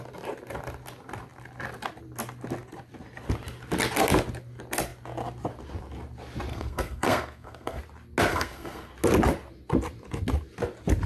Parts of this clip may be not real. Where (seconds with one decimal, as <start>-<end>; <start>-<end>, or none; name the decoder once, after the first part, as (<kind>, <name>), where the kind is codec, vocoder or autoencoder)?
6.5-7.8 (codec, SNAC); 8.3-8.9

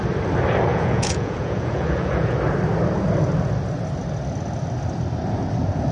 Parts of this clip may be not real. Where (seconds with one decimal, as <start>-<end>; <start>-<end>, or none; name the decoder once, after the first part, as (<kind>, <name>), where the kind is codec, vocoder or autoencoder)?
0.7-2.4 (vocoder, Vocos)

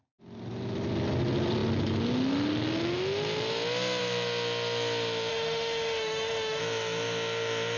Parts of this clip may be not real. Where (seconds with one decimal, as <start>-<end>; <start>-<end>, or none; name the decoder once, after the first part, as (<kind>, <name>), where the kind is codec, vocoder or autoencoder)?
5.3-6.6 (autoencoder, DAC-VAE)

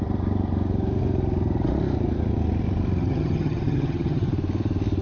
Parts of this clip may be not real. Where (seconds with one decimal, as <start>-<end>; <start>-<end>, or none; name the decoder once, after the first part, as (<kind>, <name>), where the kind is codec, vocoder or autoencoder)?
3.0-4.3 (vocoder, HiFi-GAN)

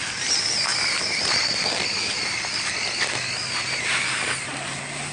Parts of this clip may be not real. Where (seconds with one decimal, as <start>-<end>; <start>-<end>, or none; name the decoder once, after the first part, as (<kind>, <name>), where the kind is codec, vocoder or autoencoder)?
none

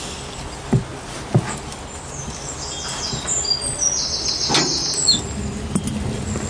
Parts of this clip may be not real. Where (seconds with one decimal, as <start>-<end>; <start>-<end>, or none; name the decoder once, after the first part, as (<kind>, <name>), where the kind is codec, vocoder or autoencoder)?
none

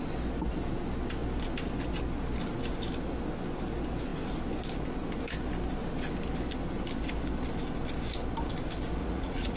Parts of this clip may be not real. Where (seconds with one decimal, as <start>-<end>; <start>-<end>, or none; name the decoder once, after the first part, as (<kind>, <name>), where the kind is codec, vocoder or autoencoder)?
9.0-9.6 (vocoder, Vocos)